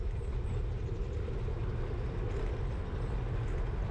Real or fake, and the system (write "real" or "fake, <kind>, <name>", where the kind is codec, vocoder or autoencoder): real